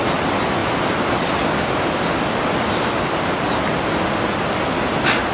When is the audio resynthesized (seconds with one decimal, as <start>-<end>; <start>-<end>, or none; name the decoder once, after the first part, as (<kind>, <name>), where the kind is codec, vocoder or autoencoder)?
none